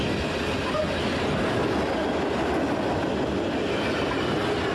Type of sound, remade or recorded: recorded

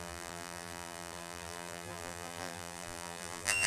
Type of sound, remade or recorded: remade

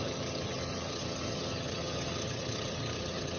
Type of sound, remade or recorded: remade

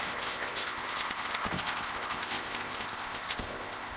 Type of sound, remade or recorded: remade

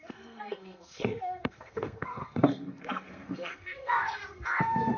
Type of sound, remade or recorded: remade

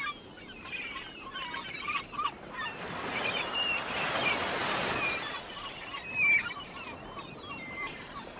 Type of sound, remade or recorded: recorded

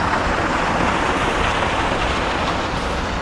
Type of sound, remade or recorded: recorded